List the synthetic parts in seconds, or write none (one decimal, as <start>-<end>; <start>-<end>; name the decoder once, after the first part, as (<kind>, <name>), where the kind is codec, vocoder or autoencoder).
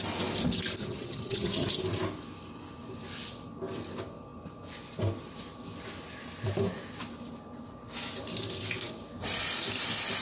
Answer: 0.8-1.7 (vocoder, HiFi-GAN)